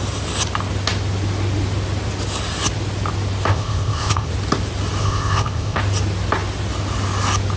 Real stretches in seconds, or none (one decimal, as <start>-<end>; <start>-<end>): 0.0-3.5; 4.3-5.0; 5.8-7.6